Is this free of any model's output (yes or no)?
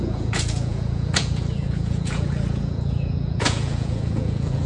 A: no